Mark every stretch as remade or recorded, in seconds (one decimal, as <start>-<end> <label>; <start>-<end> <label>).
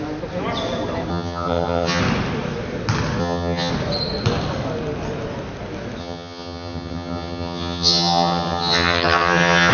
0.0-1.1 recorded; 1.1-2.0 remade; 2.0-3.2 recorded; 3.2-3.7 remade; 3.7-6.0 recorded; 6.0-9.7 remade